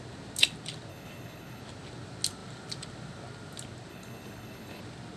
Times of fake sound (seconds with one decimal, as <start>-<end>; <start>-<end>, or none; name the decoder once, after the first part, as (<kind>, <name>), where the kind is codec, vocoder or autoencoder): 0.9-1.6 (codec, HILCodec); 3.9-4.8